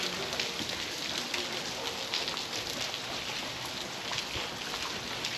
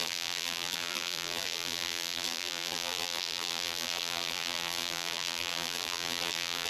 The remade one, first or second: second